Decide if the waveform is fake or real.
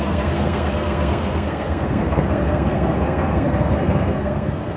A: fake